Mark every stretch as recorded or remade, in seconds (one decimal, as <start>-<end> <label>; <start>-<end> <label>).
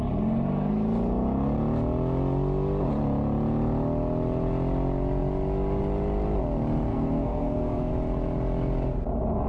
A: 0.0-6.9 recorded; 6.9-7.9 remade; 7.9-9.5 recorded